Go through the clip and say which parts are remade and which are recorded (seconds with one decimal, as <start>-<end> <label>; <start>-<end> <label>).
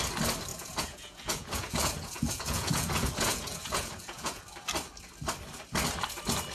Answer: 0.0-0.5 recorded; 0.5-4.4 remade; 4.4-6.5 recorded